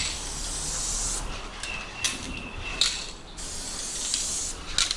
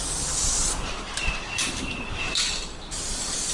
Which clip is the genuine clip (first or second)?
first